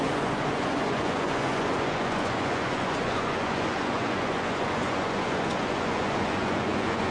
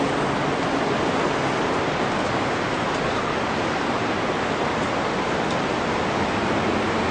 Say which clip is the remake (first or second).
first